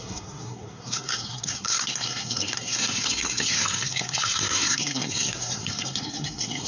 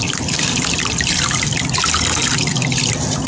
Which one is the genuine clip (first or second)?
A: second